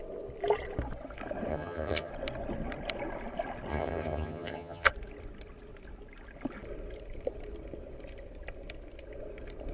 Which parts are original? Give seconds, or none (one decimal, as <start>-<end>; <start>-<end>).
0.0-1.5; 2.1-3.7; 4.9-9.7